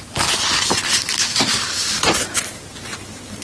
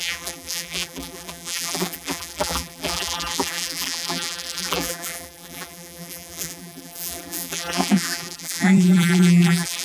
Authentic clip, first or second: first